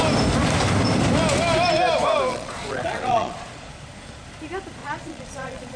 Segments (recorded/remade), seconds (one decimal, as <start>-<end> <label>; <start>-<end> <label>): 0.0-2.3 recorded; 2.3-3.7 remade; 3.7-4.8 recorded; 4.8-5.8 remade